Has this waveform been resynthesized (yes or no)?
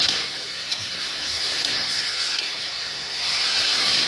yes